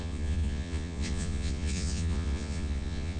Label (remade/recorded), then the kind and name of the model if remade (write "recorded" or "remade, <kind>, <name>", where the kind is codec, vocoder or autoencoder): remade, vocoder, Vocos